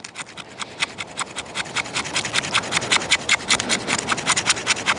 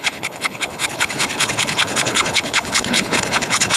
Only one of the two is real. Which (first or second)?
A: first